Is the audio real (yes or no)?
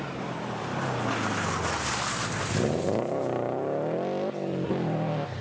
yes